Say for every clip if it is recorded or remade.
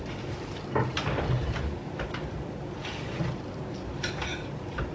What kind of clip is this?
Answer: recorded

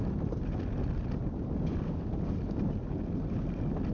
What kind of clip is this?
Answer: recorded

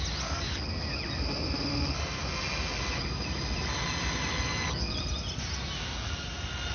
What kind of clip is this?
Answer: recorded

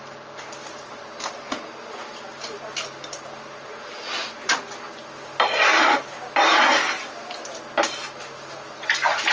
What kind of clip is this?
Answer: recorded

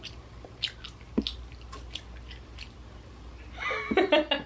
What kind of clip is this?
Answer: recorded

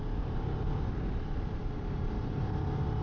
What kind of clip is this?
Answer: recorded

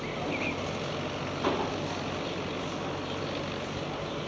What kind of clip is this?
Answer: recorded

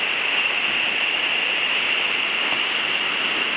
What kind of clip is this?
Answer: recorded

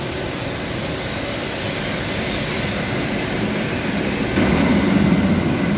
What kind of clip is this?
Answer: recorded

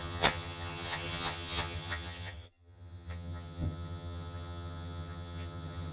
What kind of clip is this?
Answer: remade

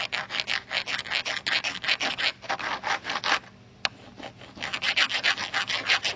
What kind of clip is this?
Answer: recorded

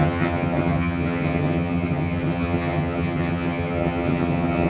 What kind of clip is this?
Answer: remade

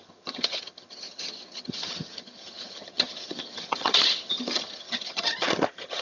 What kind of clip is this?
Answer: remade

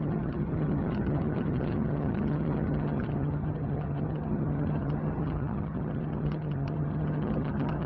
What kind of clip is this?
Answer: remade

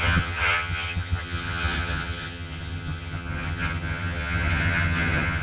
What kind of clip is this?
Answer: remade